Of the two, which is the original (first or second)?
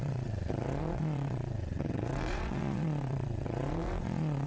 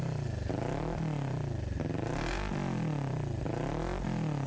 second